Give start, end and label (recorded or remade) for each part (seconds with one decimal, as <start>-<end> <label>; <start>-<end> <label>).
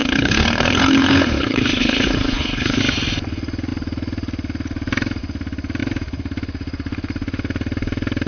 0.0-2.8 remade; 2.8-8.3 recorded